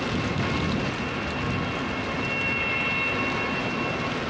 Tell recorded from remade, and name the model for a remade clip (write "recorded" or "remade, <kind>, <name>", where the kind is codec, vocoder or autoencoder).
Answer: recorded